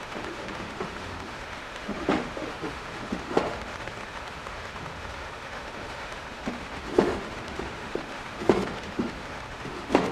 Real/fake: fake